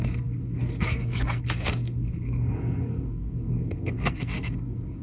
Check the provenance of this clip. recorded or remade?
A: remade